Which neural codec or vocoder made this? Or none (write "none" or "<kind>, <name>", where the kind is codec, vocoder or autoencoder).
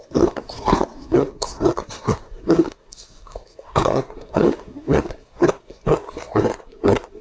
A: codec, SNAC